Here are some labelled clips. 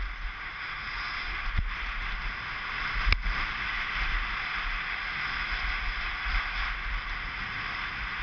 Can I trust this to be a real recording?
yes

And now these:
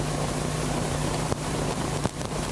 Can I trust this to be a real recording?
no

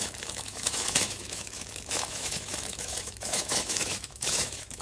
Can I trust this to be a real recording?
no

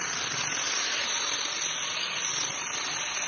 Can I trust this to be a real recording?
yes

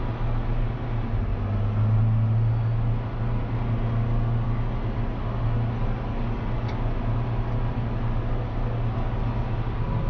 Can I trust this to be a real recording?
yes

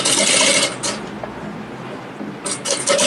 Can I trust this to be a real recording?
yes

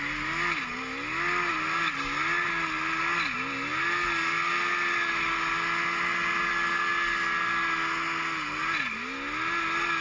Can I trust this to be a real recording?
yes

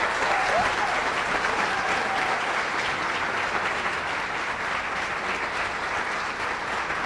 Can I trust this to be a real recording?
yes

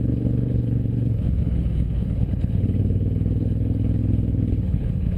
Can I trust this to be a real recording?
no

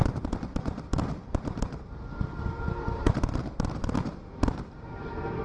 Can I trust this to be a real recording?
no